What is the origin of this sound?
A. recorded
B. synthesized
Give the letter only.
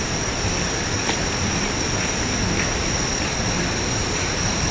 A